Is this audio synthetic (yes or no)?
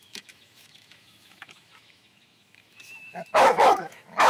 yes